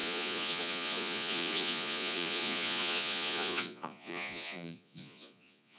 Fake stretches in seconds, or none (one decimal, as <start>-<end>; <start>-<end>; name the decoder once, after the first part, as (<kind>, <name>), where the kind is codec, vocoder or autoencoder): 0.0-5.8 (vocoder, Vocos)